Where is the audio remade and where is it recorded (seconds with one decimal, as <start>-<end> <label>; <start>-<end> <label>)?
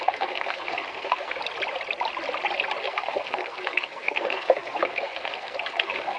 0.0-1.4 remade; 1.4-2.8 recorded; 2.8-6.2 remade